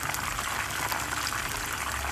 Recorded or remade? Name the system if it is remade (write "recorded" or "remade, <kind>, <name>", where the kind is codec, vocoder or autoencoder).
recorded